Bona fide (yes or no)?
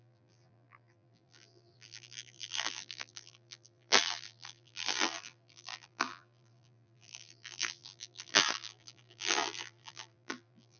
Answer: no